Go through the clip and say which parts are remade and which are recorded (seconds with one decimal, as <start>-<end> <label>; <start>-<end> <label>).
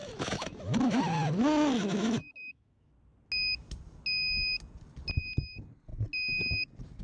0.0-1.0 remade; 1.0-1.8 recorded; 1.8-2.9 remade; 2.9-7.0 recorded